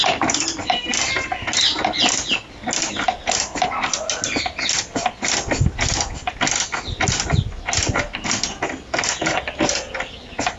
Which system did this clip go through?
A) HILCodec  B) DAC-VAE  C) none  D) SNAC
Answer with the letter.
C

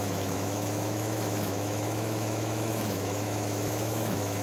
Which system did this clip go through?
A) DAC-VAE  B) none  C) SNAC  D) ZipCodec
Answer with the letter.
A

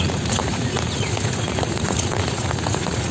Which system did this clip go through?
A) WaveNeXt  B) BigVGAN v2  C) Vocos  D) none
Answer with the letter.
C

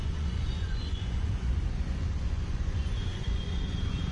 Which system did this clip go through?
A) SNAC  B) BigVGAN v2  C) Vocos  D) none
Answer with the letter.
C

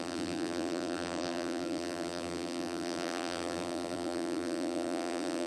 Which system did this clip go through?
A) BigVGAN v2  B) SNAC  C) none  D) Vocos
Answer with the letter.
A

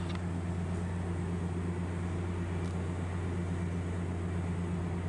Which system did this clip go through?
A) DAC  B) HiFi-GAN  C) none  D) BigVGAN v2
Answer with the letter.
C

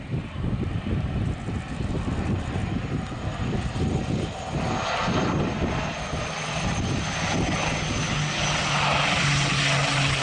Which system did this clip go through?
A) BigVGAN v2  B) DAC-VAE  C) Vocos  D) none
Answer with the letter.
D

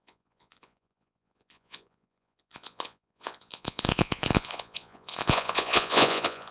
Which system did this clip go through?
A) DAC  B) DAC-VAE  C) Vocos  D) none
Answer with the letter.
C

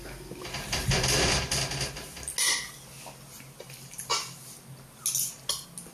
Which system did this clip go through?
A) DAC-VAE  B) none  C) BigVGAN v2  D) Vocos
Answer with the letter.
B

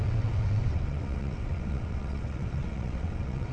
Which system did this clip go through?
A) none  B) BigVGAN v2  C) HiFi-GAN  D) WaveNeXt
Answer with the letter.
D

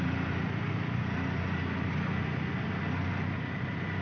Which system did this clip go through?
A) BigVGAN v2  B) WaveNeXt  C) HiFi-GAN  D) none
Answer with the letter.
D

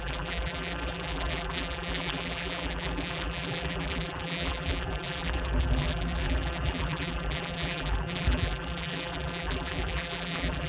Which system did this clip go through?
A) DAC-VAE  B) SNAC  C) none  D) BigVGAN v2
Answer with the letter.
D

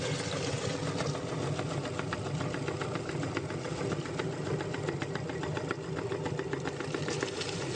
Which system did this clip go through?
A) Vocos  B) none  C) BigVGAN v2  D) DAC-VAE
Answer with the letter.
B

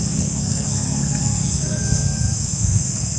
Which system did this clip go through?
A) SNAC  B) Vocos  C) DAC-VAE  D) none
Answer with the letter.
A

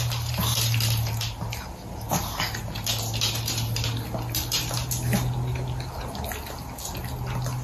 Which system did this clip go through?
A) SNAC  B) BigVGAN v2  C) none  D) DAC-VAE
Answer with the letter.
C